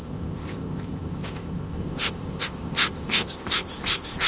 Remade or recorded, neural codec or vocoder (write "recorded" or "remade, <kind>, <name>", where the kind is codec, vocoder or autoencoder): remade, codec, ZipCodec